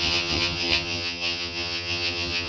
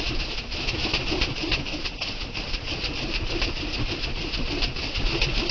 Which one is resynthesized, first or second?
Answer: first